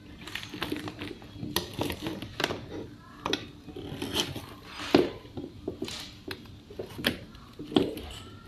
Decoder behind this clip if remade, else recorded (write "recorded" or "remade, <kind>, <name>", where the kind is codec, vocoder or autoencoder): recorded